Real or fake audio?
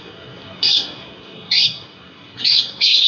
fake